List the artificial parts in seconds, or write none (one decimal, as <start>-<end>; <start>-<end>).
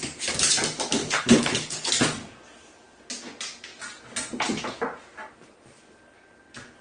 1.0-1.9